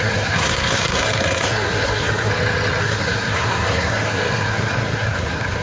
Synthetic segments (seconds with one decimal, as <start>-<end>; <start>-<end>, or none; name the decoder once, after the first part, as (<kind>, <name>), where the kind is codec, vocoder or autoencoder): 0.0-2.3 (codec, SNAC); 2.8-5.6